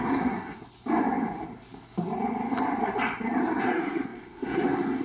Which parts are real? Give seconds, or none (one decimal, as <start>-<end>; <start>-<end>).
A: 0.6-3.6